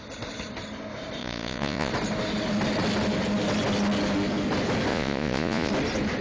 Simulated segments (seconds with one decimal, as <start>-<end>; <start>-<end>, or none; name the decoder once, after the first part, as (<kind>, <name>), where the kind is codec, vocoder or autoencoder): 1.2-1.9 (vocoder, Vocos); 4.9-5.7